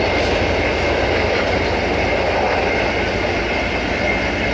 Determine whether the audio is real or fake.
real